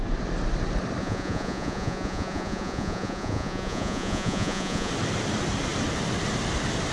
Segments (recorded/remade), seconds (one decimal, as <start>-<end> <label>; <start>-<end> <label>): 0.0-1.0 recorded; 1.0-4.9 remade; 4.9-6.9 recorded